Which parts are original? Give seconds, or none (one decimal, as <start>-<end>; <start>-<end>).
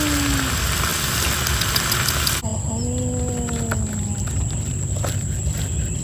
0.0-6.0